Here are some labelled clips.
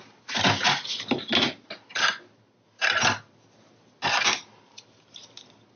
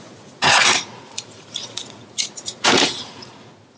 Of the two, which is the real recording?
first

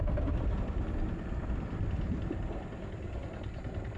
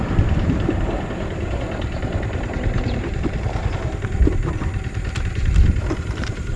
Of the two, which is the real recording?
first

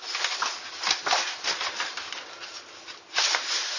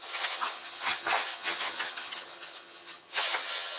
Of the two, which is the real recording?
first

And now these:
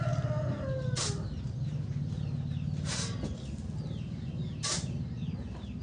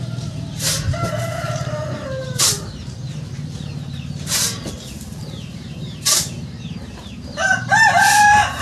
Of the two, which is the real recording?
first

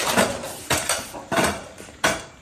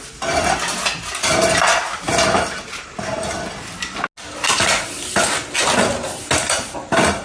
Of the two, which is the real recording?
second